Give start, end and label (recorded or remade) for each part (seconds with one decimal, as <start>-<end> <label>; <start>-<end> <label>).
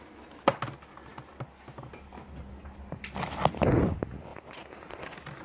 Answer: 0.0-5.4 recorded